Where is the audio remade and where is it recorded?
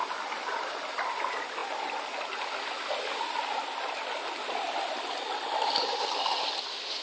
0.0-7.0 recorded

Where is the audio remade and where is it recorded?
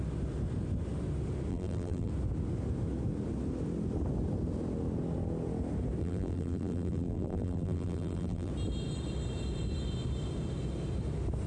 0.0-1.5 recorded; 1.5-2.1 remade; 2.1-6.0 recorded; 6.0-8.5 remade; 8.5-11.5 recorded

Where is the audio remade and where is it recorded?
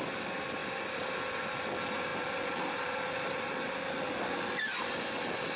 0.0-0.6 recorded; 0.6-1.3 remade; 1.3-5.6 recorded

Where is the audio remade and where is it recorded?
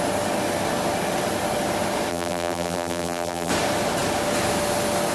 0.0-2.1 recorded; 2.1-3.5 remade; 3.5-5.1 recorded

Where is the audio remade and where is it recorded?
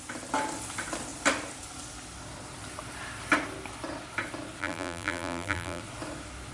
0.0-4.6 recorded; 4.6-5.8 remade; 5.8-6.5 recorded